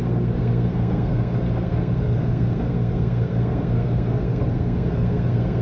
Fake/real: fake